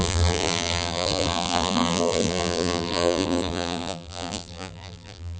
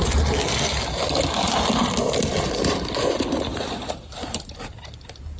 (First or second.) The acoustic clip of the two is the second